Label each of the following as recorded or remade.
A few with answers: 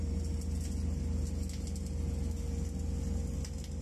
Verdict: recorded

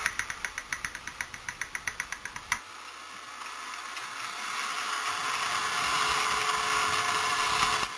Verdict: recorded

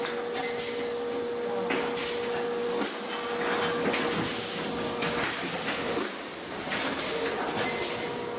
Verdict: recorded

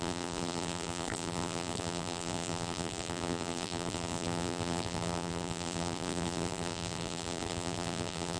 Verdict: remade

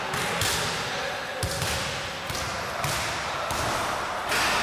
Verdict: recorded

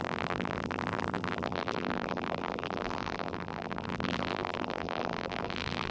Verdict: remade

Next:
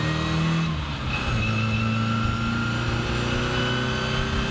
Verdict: recorded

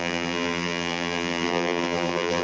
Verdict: remade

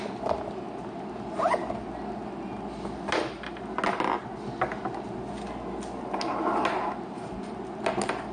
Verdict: recorded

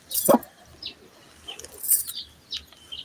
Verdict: recorded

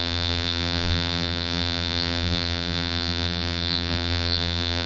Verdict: remade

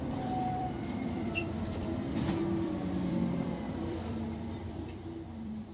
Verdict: remade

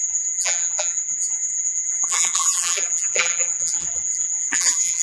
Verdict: remade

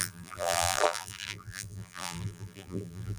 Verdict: remade